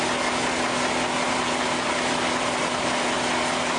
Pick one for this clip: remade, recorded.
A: recorded